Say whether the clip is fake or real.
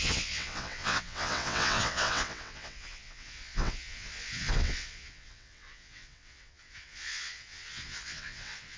fake